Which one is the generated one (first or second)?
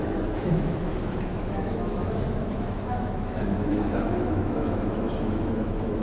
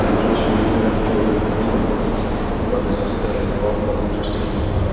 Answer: first